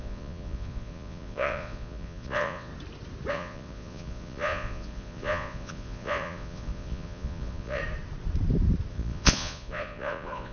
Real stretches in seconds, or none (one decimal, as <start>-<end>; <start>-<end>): 2.7-3.3; 7.8-8.9